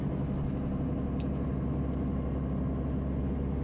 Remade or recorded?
recorded